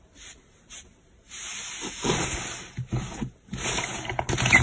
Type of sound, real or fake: fake